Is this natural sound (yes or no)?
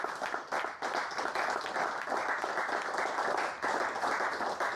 yes